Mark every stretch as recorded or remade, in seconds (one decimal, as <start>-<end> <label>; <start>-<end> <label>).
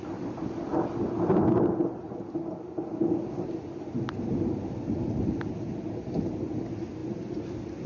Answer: 0.0-7.9 recorded